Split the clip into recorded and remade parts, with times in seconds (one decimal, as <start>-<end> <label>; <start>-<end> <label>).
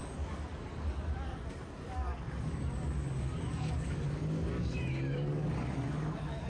0.0-6.5 remade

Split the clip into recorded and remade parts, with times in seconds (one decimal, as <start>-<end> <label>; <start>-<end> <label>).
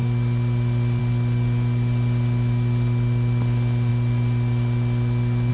0.0-5.5 recorded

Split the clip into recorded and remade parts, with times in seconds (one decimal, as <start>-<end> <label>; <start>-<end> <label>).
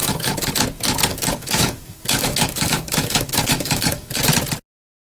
0.0-0.5 remade; 0.5-1.1 recorded; 1.1-4.2 remade; 4.2-5.1 recorded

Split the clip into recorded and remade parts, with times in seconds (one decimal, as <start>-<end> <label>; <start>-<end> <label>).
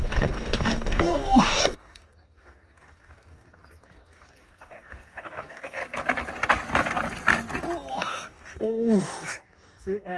0.0-5.8 remade; 5.8-7.9 recorded; 7.9-10.2 remade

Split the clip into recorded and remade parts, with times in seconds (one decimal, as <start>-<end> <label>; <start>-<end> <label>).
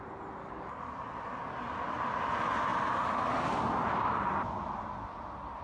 0.0-0.4 recorded; 0.4-0.9 remade; 0.9-5.6 recorded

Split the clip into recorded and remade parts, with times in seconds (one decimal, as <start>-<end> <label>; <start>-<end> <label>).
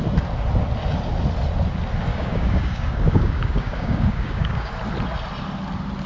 0.0-2.1 recorded; 2.1-4.7 remade; 4.7-6.1 recorded